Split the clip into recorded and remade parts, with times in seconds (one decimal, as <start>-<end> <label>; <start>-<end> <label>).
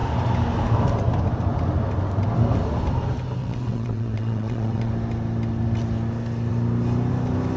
0.0-3.4 recorded; 3.4-4.9 remade; 4.9-7.6 recorded